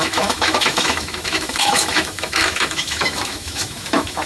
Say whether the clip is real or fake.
fake